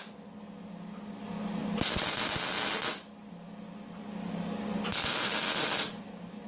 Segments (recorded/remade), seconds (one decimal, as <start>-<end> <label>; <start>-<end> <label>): 0.0-6.5 recorded